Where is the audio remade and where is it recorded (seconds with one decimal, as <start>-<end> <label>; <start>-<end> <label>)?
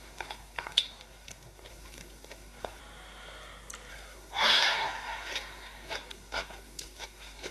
0.0-2.8 remade; 2.8-3.9 recorded; 3.9-7.5 remade